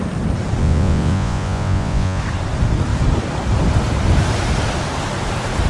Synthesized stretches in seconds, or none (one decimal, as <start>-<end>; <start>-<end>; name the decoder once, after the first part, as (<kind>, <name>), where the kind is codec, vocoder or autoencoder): 0.6-2.2 (vocoder, Vocos)